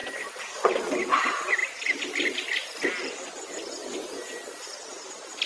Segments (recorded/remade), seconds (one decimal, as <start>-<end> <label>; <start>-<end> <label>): 0.0-0.9 remade; 0.9-5.5 recorded